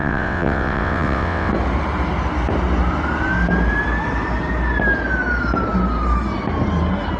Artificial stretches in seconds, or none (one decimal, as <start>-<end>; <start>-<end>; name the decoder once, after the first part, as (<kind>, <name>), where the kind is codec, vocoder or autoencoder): 0.0-1.5 (vocoder, WaveNeXt)

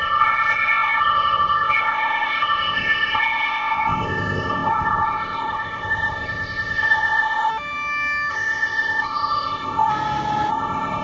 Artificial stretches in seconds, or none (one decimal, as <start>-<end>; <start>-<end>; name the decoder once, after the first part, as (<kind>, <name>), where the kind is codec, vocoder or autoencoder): 0.0-7.5 (codec, ZipCodec); 8.3-9.9; 10.5-11.0

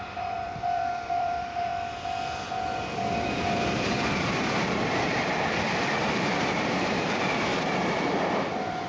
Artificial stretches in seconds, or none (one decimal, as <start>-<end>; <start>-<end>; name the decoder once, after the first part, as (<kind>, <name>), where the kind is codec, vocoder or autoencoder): 0.0-1.7 (vocoder, BigVGAN v2); 5.5-8.9

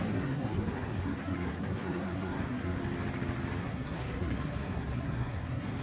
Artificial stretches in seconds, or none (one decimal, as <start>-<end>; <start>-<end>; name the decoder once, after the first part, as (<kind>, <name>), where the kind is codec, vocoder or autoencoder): 0.0-2.8 (codec, SNAC); 3.6-5.8

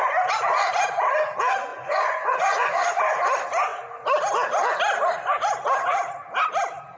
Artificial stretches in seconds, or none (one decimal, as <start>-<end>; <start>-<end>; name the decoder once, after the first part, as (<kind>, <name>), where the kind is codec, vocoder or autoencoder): 1.7-2.9 (vocoder, Vocos)